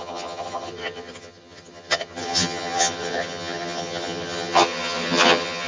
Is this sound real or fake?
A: fake